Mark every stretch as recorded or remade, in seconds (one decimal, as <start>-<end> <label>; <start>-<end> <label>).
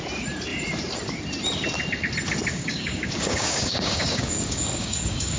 0.0-2.5 recorded; 2.5-5.4 remade